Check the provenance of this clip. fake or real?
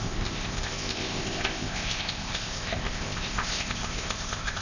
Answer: fake